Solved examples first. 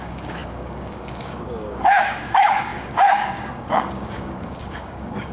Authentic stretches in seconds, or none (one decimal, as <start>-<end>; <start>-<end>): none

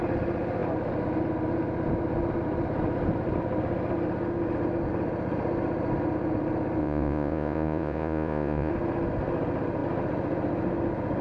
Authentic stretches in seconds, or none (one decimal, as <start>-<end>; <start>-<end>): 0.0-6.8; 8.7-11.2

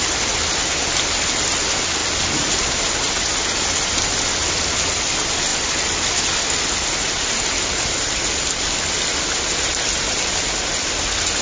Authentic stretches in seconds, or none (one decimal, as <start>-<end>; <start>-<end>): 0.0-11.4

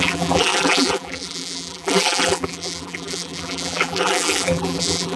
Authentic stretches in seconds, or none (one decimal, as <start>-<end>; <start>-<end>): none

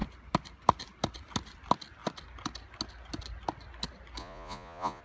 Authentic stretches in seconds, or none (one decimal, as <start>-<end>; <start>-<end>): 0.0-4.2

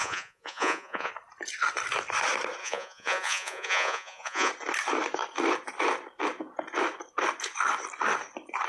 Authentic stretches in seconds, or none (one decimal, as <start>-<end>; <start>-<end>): 1.1-2.6; 4.5-8.7